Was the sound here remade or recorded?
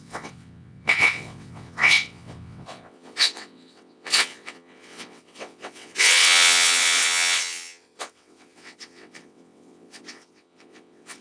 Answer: remade